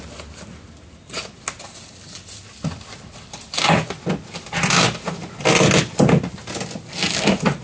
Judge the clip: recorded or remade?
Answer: recorded